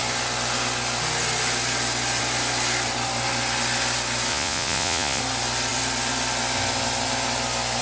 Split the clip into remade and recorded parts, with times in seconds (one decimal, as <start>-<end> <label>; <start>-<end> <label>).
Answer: 0.0-4.3 recorded; 4.3-5.2 remade; 5.2-7.8 recorded